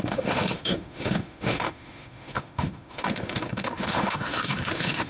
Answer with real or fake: fake